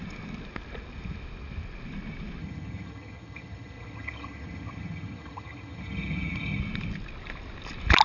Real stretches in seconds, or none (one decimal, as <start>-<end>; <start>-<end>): 0.0-2.4; 6.6-8.0